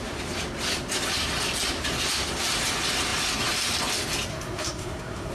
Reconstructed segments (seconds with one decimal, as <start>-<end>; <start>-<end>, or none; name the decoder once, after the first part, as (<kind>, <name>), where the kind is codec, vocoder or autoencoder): 4.3-5.3 (codec, SNAC)